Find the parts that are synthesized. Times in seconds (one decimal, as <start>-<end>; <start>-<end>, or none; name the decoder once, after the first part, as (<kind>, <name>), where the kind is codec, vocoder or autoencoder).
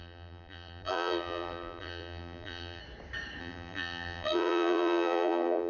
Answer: 0.0-2.8 (vocoder, BigVGAN v2); 3.4-5.7